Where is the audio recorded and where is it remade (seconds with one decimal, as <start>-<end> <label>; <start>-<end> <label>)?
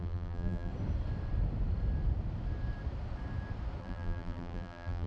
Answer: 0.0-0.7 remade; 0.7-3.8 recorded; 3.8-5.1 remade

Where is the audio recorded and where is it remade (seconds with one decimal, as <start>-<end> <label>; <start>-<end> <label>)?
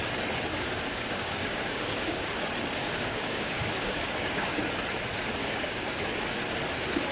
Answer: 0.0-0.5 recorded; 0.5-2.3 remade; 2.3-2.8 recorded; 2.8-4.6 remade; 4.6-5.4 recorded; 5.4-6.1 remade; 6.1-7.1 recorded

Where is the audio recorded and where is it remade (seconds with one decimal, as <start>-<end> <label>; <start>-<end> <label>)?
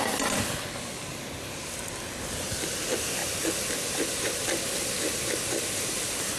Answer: 0.0-6.4 recorded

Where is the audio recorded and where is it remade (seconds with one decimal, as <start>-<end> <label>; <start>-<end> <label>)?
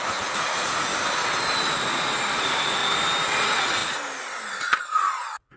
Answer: 0.0-0.9 remade; 0.9-1.8 recorded; 1.8-2.8 remade; 2.8-3.3 recorded; 3.3-3.8 remade; 3.8-4.5 recorded; 4.5-5.6 remade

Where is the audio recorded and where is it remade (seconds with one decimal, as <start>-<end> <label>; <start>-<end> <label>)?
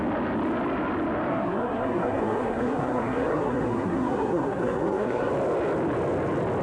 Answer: 0.0-1.3 recorded; 1.3-5.3 remade; 5.3-6.6 recorded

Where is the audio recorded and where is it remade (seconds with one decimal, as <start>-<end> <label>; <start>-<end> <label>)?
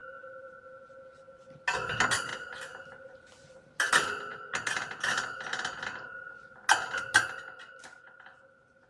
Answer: 0.0-8.9 recorded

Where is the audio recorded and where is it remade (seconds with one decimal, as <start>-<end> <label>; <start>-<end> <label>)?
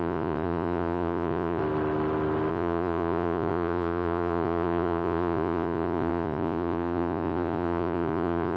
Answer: 0.0-1.6 remade; 1.6-2.5 recorded; 2.5-8.6 remade